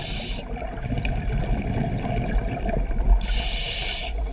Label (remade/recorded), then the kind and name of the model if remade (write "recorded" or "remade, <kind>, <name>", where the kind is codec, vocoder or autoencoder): recorded